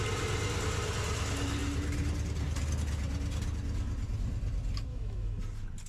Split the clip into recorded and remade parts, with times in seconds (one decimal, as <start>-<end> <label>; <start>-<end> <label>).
0.0-4.9 recorded; 4.9-5.4 remade; 5.4-5.9 recorded